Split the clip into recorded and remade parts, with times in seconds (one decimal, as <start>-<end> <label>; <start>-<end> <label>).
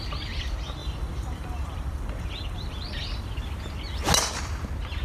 0.0-0.8 recorded; 0.8-3.3 remade; 3.3-5.0 recorded